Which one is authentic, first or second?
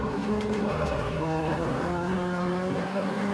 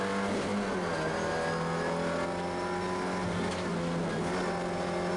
second